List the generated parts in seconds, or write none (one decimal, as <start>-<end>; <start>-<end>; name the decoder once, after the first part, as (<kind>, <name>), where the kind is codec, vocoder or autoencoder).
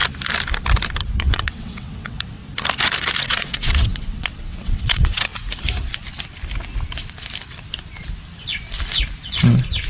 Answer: 1.1-2.4 (vocoder, WaveNeXt); 3.2-5.3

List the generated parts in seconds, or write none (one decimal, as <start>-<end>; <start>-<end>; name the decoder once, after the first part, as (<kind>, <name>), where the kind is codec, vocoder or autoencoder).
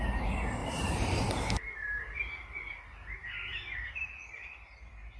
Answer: 0.6-1.2 (vocoder, BigVGAN v2); 1.8-2.7; 3.2-4.1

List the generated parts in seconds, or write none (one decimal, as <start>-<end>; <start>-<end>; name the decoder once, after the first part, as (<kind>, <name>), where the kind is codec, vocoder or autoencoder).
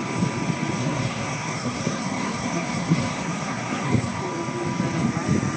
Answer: 0.8-4.2 (codec, SNAC)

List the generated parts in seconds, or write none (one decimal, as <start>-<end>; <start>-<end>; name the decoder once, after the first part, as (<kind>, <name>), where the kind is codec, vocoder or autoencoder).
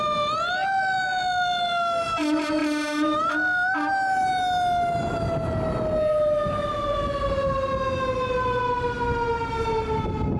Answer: none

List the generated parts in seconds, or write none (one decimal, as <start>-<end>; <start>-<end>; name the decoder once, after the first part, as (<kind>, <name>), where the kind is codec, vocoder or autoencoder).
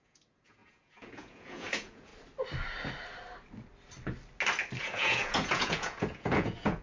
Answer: 0.0-2.1 (vocoder, Vocos); 4.8-6.8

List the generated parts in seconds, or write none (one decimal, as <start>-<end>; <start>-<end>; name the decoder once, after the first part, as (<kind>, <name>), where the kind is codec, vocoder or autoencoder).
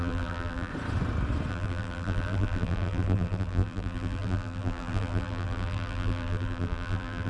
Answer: 0.0-0.7 (vocoder, BigVGAN v2); 1.5-7.3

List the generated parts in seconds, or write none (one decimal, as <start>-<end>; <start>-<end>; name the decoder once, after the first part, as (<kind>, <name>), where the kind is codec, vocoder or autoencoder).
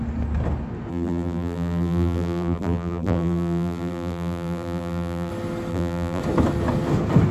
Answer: 0.9-5.3 (vocoder, BigVGAN v2); 5.7-6.2